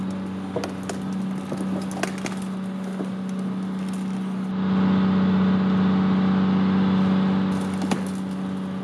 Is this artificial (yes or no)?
no